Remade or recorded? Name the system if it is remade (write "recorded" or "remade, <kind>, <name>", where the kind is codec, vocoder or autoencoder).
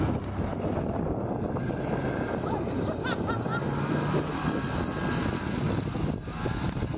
recorded